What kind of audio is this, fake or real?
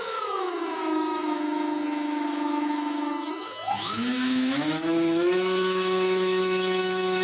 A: fake